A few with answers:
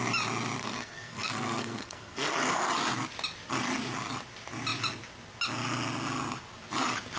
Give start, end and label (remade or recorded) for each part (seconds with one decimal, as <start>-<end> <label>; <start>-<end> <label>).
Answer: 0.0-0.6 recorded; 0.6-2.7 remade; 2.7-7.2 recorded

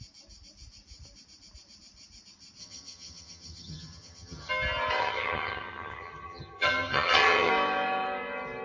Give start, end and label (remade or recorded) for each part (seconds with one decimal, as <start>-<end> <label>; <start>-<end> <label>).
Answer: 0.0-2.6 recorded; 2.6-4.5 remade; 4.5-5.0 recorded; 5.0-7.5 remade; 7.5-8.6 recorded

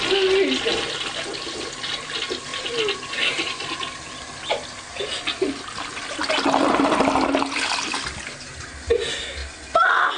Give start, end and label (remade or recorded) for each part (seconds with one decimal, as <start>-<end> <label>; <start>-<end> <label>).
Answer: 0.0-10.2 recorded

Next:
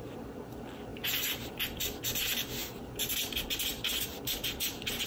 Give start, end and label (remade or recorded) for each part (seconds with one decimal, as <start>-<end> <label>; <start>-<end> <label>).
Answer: 0.0-0.9 recorded; 0.9-1.6 remade; 1.6-2.6 recorded; 2.6-3.1 remade; 3.1-5.1 recorded

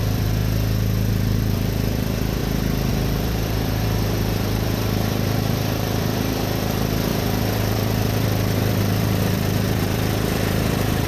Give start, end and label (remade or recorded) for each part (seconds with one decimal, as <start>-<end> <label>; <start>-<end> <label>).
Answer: 0.0-0.4 remade; 0.4-1.1 recorded; 1.1-2.4 remade; 2.4-2.9 recorded; 2.9-11.1 remade